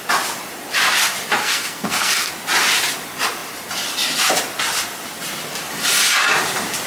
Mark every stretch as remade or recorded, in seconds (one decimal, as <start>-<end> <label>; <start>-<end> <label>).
0.0-1.4 recorded; 1.4-2.3 remade; 2.3-6.9 recorded